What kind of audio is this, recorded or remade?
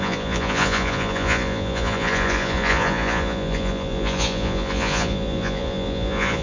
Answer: remade